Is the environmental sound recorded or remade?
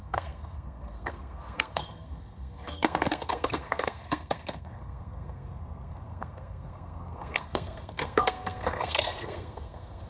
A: remade